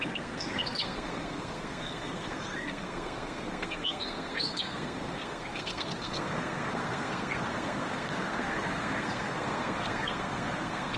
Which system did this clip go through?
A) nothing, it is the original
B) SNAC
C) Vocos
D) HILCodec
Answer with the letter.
B